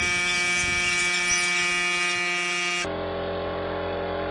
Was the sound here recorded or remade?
recorded